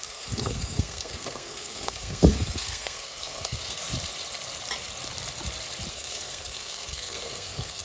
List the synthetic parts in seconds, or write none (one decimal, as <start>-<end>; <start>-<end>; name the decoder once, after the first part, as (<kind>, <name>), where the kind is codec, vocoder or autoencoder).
0.0-3.8 (codec, SNAC); 5.9-7.8